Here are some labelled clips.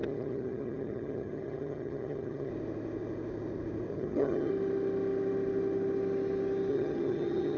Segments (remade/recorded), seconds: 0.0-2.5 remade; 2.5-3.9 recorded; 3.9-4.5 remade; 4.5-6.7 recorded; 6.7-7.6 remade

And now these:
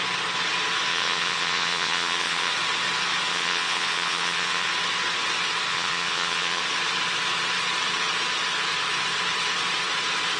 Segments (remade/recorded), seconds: 0.0-0.9 recorded; 0.9-2.5 remade; 2.5-3.3 recorded; 3.3-4.7 remade; 4.7-5.7 recorded; 5.7-6.6 remade; 6.6-10.4 recorded

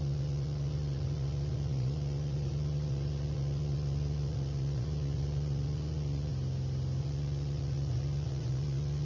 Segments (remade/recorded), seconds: 0.0-6.3 remade; 6.3-7.0 recorded; 7.0-9.1 remade

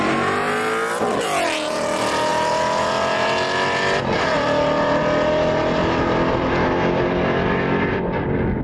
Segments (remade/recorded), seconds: 0.0-5.8 recorded; 5.8-7.1 remade; 7.1-8.6 recorded

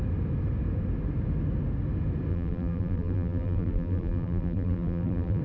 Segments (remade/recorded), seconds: 0.0-2.3 recorded; 2.3-5.4 remade